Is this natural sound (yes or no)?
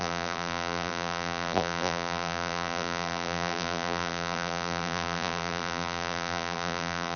no